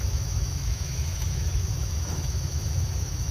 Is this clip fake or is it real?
fake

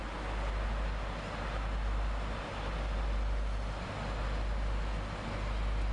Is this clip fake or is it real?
real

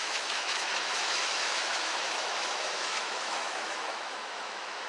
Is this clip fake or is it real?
fake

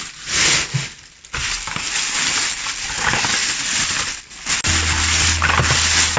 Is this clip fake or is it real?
real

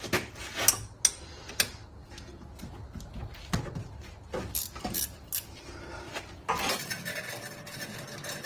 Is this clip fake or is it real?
real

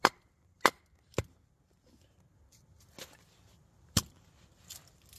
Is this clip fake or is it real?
real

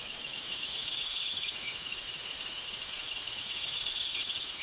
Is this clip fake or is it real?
fake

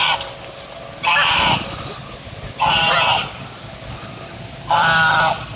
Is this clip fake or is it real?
real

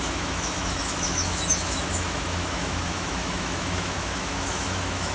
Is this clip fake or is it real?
fake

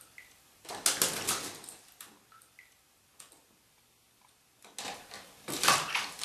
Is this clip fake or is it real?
real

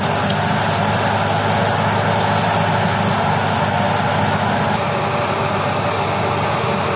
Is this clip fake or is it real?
real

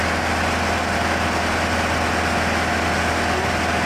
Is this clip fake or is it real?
real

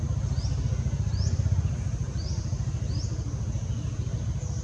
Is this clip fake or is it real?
real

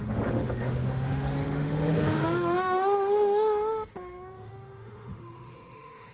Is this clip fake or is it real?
fake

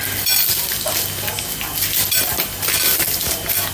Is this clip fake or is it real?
real